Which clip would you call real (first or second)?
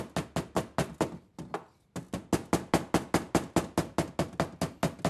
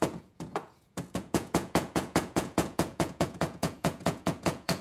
first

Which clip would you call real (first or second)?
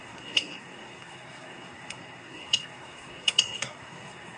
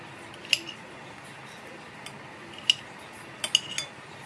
second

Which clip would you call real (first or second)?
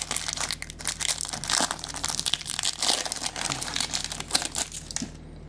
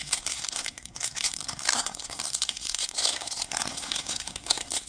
first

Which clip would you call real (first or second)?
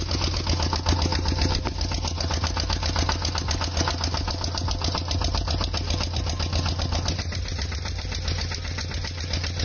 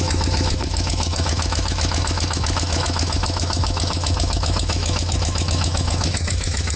first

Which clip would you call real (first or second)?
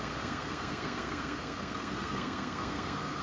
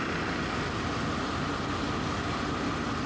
second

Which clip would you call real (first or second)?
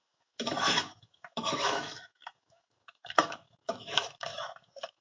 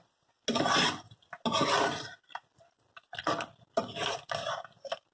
second